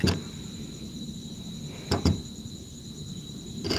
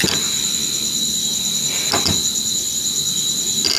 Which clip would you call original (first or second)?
second